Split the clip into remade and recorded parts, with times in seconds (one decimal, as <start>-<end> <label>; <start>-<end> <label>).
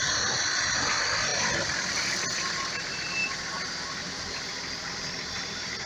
0.0-3.2 remade; 3.2-4.9 recorded; 4.9-5.9 remade